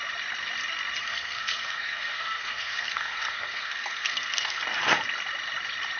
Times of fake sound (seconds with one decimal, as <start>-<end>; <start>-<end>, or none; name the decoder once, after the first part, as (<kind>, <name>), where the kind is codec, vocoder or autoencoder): 1.0-4.6 (codec, SNAC)